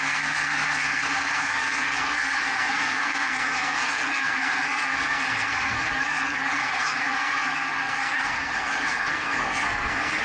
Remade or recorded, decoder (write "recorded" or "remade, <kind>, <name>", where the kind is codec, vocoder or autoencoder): remade, codec, SNAC